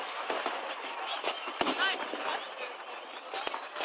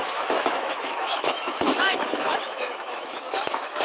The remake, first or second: second